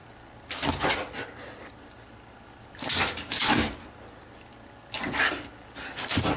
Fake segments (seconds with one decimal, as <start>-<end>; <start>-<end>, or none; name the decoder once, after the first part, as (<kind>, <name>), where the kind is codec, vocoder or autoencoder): none